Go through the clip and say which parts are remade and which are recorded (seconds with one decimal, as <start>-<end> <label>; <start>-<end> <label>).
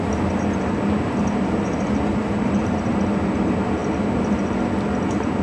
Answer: 0.0-2.2 recorded; 2.2-3.0 remade; 3.0-5.4 recorded